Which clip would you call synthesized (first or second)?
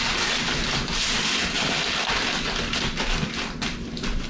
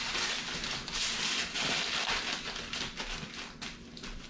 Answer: first